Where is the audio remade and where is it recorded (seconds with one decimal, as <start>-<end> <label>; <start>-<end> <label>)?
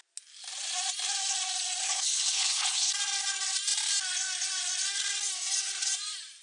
0.0-1.8 recorded; 1.8-2.9 remade; 2.9-6.4 recorded